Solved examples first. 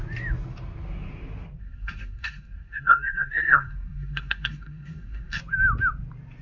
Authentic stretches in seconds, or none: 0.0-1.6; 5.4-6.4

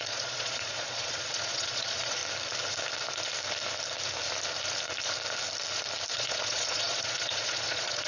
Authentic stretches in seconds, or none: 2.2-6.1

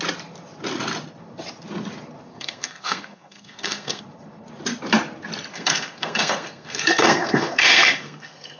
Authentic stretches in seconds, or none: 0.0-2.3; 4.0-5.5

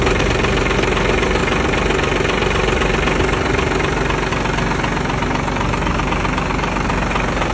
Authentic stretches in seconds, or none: 0.0-7.5

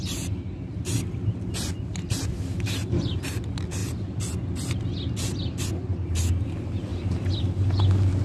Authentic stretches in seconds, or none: 0.0-1.9; 3.4-6.9

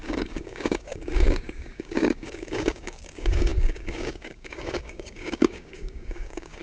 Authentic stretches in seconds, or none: none